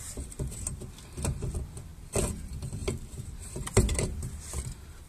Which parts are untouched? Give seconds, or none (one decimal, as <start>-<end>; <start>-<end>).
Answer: 1.9-2.4